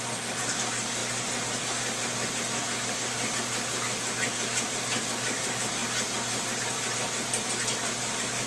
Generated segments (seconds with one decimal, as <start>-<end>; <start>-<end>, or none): none